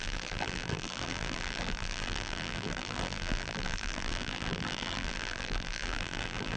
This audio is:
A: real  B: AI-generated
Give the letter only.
B